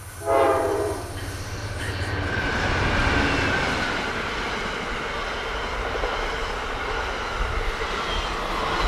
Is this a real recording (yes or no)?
yes